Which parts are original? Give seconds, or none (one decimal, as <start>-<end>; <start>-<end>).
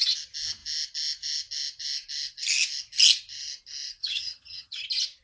0.0-4.0; 4.8-5.2